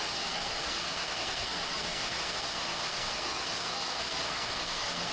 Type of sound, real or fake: fake